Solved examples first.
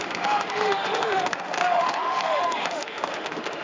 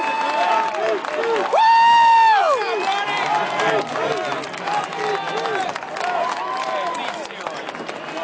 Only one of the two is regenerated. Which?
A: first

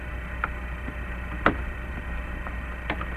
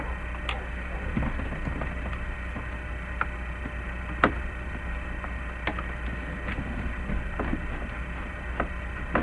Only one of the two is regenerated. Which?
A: first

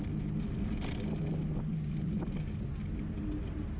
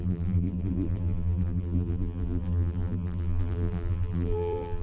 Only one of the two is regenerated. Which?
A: second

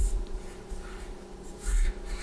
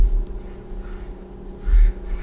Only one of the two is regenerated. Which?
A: first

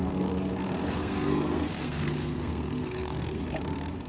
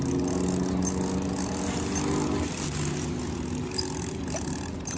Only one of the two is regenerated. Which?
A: first